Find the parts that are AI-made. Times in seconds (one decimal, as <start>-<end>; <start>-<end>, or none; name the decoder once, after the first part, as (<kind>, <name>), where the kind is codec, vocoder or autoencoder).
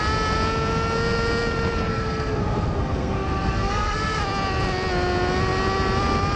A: 1.9-4.2 (codec, SNAC)